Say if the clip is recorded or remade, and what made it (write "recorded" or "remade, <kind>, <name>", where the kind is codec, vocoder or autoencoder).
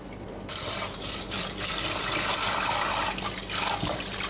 remade, vocoder, BigVGAN v2